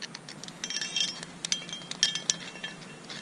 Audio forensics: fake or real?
real